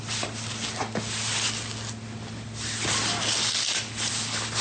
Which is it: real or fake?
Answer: real